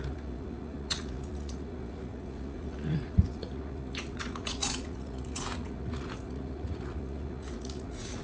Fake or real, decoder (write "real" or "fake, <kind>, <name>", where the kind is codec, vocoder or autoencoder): fake, vocoder, Vocos